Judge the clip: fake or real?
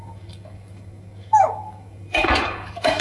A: fake